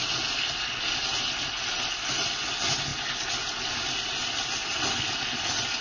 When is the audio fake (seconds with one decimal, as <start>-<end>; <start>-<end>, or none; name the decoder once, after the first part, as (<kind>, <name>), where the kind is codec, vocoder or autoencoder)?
none